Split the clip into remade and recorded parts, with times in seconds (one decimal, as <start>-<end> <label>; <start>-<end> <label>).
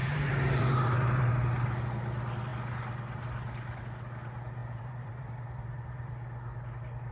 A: 0.0-1.3 remade; 1.3-4.6 recorded; 4.6-6.1 remade; 6.1-7.1 recorded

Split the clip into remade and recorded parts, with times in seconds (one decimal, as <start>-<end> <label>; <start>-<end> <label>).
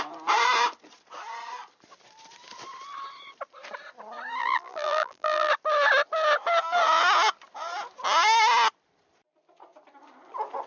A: 0.0-4.4 recorded; 4.4-5.5 remade; 5.5-10.7 recorded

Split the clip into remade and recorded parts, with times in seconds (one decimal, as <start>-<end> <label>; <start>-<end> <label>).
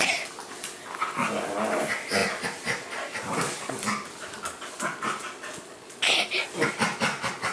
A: 0.0-7.5 recorded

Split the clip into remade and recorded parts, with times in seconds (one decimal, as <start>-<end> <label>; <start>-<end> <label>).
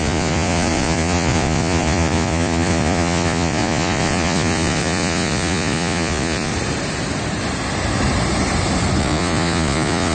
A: 0.0-6.5 remade; 6.5-9.0 recorded; 9.0-10.1 remade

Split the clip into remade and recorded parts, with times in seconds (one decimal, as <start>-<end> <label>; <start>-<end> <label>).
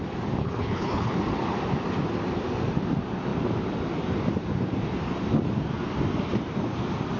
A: 0.0-0.4 recorded; 0.4-1.2 remade; 1.2-7.2 recorded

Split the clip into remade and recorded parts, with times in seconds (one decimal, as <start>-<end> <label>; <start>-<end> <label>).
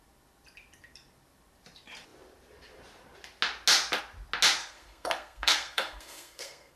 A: 0.0-4.6 recorded; 4.6-6.8 remade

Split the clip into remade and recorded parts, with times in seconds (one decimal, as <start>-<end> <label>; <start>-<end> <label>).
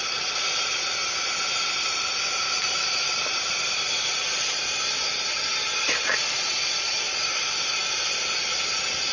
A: 0.0-9.1 recorded